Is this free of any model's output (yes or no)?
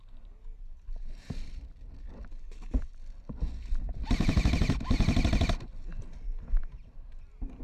yes